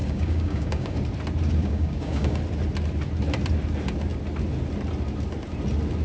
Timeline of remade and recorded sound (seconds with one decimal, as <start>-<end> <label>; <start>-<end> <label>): 0.0-1.0 remade; 1.0-1.6 recorded; 1.6-2.4 remade; 2.4-6.0 recorded